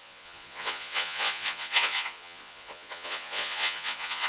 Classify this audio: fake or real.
fake